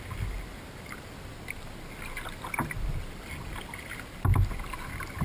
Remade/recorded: recorded